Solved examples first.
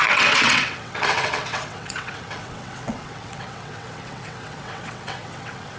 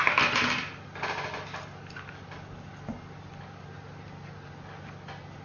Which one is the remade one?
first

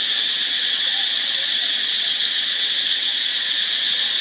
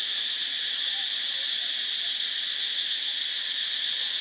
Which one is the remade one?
first